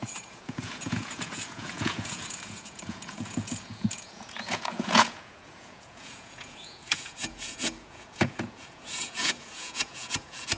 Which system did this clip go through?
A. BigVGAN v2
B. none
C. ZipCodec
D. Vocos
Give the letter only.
D